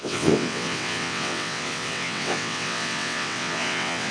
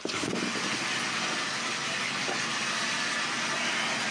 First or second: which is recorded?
second